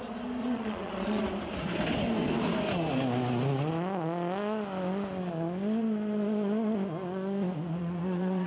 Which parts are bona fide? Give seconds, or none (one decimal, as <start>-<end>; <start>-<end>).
0.0-0.4; 1.2-7.8

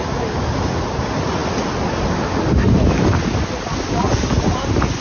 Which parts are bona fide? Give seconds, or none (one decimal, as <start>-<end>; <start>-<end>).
0.0-5.0

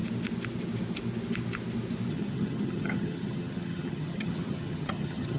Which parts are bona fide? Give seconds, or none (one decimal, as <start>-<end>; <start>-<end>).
0.0-2.1

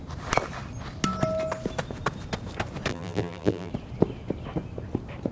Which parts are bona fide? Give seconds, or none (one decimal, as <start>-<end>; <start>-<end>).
0.0-2.9; 3.7-5.3

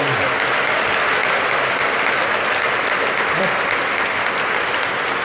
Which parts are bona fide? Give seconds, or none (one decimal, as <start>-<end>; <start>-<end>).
0.0-1.2; 3.4-5.2

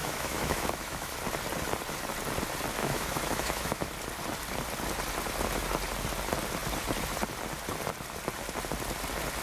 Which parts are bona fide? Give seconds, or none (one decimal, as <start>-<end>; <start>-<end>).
1.1-2.8; 3.9-9.4

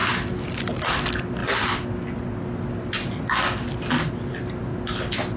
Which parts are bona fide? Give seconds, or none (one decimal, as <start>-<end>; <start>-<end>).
0.0-5.4

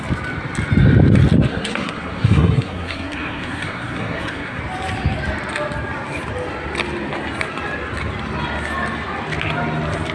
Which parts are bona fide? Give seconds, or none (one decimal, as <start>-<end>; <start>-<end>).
0.0-1.5; 4.6-10.1